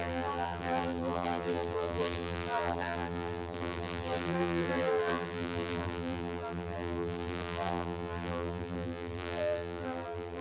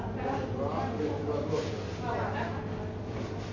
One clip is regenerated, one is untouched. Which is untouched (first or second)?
second